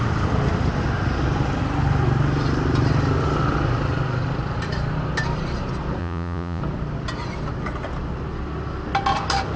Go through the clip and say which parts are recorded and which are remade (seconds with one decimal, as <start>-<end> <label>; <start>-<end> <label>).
0.0-6.0 recorded; 6.0-6.6 remade; 6.6-9.6 recorded